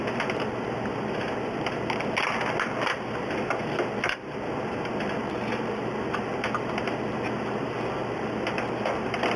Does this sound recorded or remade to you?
recorded